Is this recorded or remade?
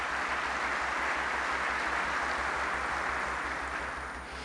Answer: recorded